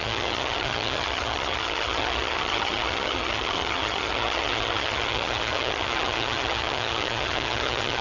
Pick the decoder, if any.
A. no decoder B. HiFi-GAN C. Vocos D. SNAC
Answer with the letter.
B